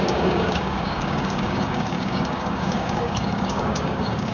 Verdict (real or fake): fake